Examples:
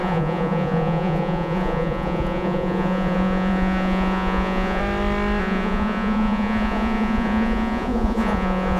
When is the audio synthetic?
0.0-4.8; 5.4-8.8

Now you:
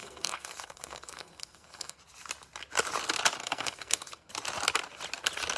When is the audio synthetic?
0.0-2.0; 3.4-4.3

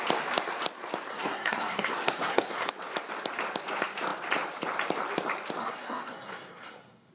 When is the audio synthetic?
1.1-2.7; 5.6-7.1

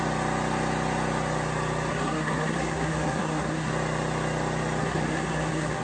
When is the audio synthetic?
1.9-3.7; 4.8-5.8

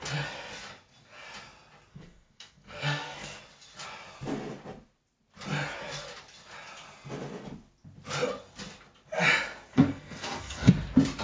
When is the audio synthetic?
1.9-3.4; 9.7-10.7

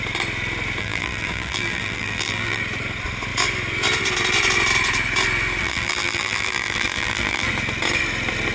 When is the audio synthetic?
0.8-2.6; 5.6-7.5

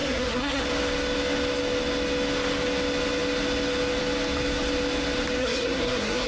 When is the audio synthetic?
0.0-0.6; 5.4-6.3